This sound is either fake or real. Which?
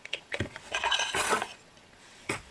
fake